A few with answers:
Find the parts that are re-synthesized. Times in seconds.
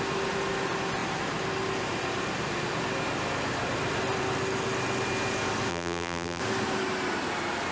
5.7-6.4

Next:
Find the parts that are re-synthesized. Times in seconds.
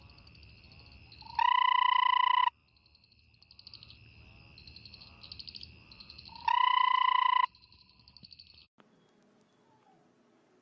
6.0-7.7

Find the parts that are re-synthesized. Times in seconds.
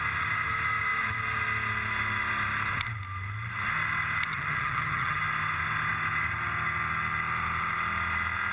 4.3-5.2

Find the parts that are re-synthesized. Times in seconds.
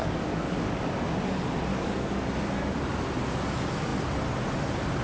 0.0-0.8; 1.7-2.3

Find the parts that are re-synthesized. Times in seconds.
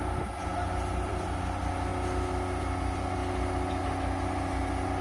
none